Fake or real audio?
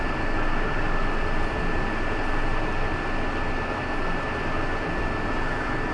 real